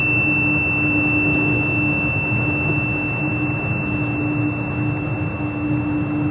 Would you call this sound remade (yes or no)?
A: no